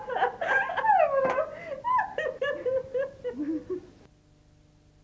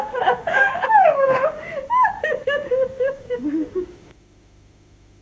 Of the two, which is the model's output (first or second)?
second